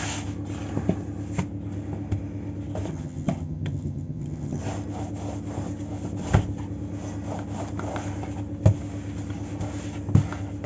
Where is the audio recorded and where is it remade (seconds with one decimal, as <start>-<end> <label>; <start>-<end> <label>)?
0.0-2.9 recorded; 2.9-4.6 remade; 4.6-10.7 recorded